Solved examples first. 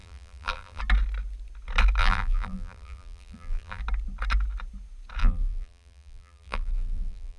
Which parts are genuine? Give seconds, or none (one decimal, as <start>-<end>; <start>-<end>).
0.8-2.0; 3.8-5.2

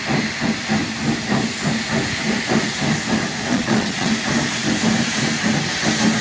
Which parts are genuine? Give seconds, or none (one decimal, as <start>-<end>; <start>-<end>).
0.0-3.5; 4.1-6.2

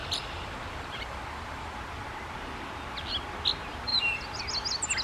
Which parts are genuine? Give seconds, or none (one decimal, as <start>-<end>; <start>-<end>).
1.8-3.9; 4.4-5.0

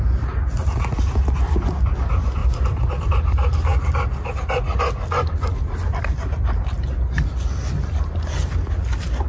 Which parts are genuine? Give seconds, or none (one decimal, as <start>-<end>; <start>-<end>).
0.0-9.3

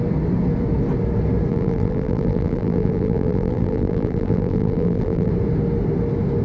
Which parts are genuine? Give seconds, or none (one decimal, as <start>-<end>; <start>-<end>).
0.0-1.5; 5.3-6.4

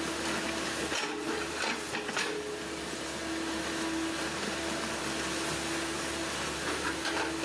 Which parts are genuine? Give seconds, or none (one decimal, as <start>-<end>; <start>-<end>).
0.0-7.4

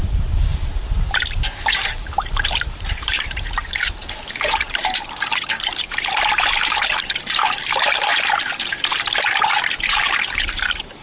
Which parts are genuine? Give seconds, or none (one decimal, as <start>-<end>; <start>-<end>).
0.5-1.1; 8.1-8.7